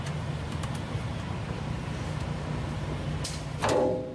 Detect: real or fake real